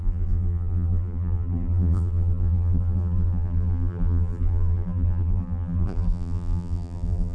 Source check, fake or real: fake